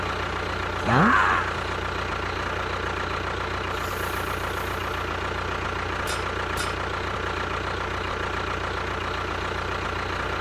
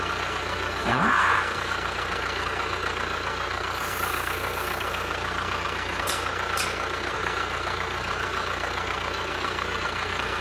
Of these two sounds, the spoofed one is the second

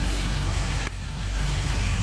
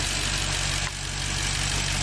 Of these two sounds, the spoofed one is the first